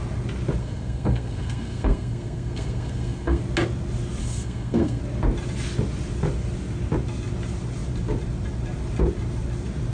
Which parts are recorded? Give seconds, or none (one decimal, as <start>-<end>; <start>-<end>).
0.0-0.6; 3.4-4.2; 5.0-9.9